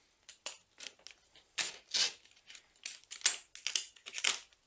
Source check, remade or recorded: recorded